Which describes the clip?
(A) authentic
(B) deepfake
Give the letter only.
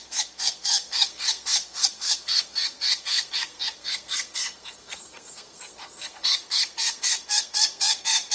B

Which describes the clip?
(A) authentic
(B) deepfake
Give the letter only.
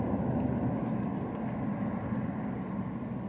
A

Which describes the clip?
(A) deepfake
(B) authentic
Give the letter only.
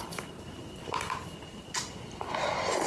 B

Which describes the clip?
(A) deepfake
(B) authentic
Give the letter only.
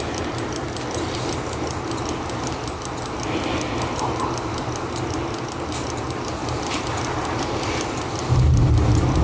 B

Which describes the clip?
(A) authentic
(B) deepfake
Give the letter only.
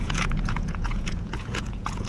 B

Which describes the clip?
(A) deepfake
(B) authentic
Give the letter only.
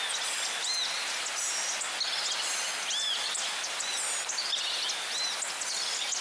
B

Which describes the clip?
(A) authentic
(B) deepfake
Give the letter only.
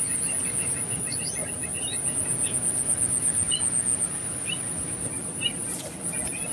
A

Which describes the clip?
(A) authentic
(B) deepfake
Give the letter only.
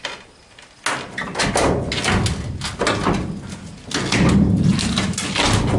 A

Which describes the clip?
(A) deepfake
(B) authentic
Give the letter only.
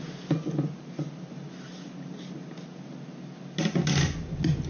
B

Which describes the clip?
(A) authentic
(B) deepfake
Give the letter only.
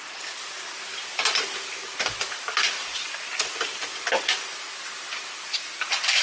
B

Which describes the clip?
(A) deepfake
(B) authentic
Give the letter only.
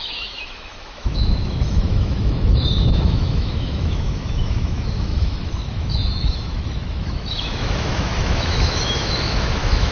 A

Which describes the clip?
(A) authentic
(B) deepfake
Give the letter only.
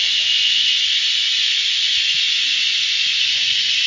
B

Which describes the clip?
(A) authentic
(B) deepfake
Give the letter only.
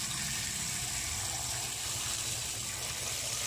A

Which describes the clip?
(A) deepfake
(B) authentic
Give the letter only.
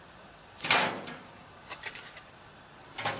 B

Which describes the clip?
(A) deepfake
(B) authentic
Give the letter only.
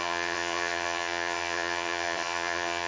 A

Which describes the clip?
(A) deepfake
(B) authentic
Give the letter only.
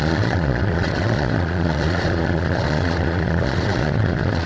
A